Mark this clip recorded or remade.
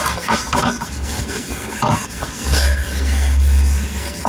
remade